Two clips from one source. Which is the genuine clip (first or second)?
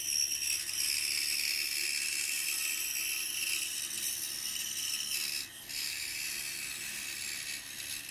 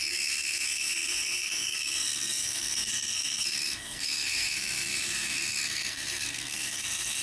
first